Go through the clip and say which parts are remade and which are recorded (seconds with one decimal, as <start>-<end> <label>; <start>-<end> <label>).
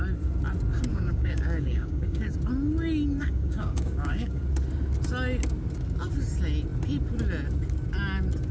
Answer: 0.0-0.9 recorded; 0.9-2.3 remade; 2.3-3.2 recorded; 3.2-4.4 remade; 4.4-8.5 recorded